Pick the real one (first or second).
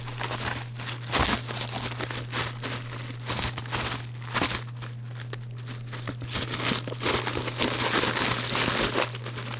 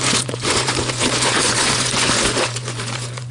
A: first